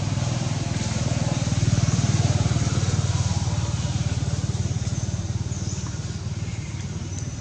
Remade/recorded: recorded